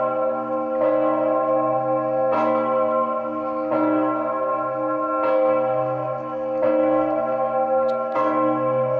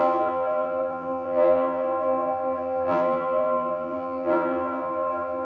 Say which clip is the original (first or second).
first